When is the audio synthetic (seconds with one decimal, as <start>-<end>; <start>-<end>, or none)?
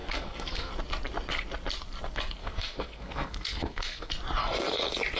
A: 0.0-0.7; 2.4-4.1